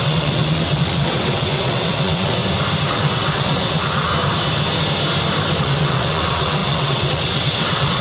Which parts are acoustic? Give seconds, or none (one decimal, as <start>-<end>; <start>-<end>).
2.4-2.9; 4.1-5.6